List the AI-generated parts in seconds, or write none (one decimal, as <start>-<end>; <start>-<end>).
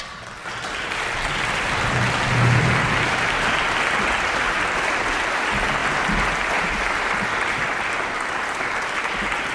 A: none